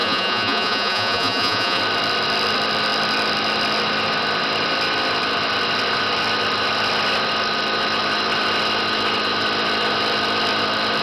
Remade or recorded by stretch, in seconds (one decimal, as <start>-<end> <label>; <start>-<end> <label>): 0.0-1.8 remade; 1.8-11.0 recorded